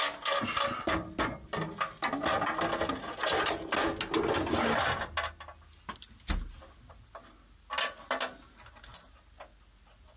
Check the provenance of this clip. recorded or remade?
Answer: recorded